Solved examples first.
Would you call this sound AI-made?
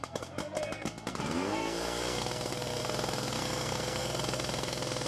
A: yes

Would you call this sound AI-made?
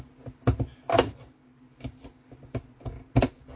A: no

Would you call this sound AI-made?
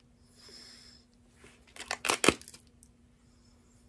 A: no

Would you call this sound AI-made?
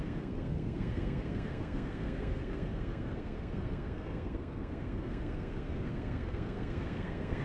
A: yes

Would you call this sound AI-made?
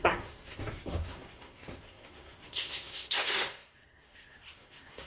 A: yes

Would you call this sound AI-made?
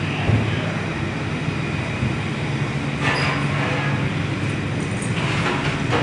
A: no